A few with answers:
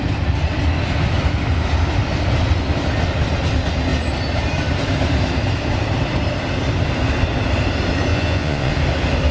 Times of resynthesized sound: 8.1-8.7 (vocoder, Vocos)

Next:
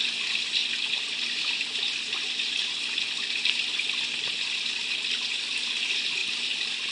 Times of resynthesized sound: none

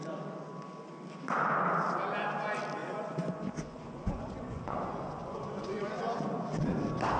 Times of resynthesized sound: 2.8-6.8 (vocoder, Vocos)

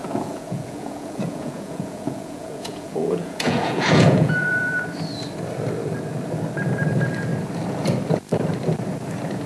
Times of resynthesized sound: 0.0-4.8 (vocoder, Vocos)

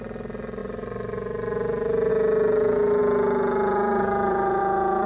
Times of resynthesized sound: none